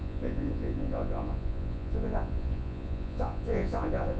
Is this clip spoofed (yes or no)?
yes